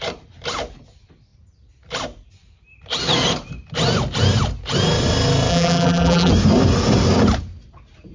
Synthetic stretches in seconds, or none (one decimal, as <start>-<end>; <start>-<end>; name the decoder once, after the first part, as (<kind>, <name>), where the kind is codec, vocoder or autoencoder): 5.5-6.3 (vocoder, BigVGAN v2)